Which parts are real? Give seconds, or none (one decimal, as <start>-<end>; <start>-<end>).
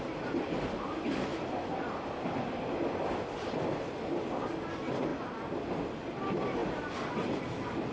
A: 0.0-1.3; 3.5-5.1; 5.6-6.6; 7.2-7.9